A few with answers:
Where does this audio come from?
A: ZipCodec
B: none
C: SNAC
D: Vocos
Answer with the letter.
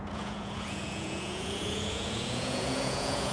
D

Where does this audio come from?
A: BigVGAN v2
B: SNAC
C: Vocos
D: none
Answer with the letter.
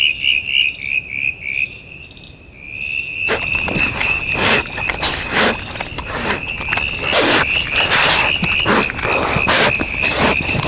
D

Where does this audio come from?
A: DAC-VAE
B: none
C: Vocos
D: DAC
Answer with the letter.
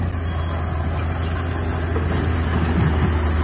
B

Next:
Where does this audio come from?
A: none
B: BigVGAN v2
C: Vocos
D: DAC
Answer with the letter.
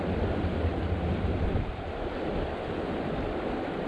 A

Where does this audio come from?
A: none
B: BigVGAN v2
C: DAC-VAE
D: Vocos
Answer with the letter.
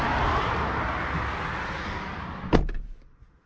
A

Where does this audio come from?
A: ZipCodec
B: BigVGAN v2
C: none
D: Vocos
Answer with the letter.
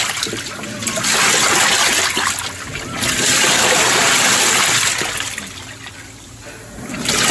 C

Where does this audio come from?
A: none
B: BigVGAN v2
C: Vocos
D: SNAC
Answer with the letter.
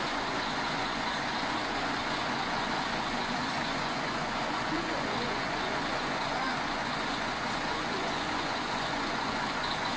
C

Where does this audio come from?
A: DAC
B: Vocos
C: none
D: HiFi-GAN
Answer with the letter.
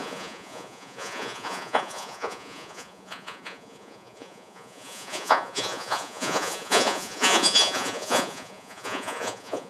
B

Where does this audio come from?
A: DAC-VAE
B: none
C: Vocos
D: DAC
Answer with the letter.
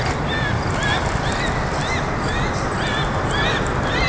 B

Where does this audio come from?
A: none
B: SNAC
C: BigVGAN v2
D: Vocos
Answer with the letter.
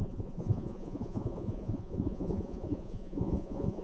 D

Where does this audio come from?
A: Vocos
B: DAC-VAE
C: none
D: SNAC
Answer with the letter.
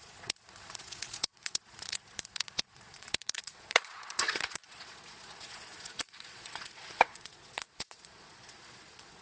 A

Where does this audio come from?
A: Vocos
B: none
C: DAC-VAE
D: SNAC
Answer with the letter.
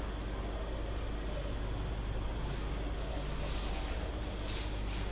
B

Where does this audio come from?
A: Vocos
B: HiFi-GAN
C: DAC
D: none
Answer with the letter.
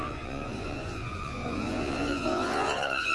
A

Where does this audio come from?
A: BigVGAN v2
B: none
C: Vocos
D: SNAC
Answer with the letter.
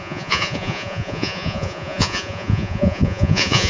C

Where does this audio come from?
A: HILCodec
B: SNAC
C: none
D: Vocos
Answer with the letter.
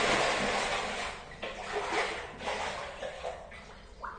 C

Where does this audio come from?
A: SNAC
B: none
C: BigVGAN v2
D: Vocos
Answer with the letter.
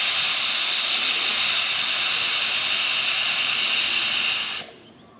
B